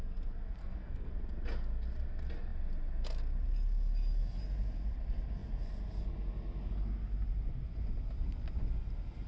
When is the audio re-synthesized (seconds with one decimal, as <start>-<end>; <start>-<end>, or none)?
0.6-1.1